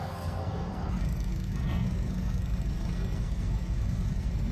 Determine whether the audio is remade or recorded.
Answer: remade